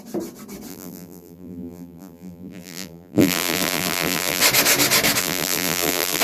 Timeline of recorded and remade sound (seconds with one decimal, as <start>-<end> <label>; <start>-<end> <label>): 0.0-0.7 recorded; 0.7-4.4 remade; 4.4-5.2 recorded; 5.2-6.2 remade